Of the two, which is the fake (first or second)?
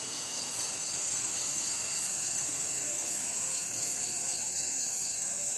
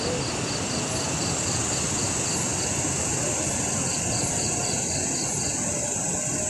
first